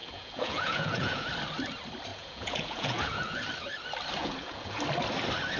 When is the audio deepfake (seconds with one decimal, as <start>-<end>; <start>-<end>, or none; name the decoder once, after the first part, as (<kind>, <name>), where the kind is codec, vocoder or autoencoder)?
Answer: 0.0-1.3 (vocoder, Vocos); 2.1-3.4; 4.2-4.8